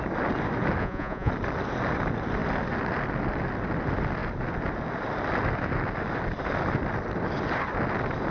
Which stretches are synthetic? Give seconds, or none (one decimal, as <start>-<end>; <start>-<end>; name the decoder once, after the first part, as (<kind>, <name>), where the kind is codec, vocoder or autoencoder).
0.8-1.3 (vocoder, Vocos)